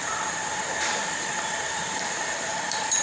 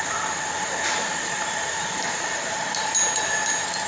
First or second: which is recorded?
second